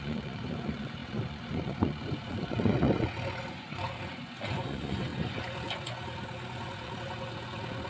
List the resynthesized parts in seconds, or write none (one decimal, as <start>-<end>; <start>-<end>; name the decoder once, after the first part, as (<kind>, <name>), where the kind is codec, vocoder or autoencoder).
0.0-7.9 (vocoder, Vocos)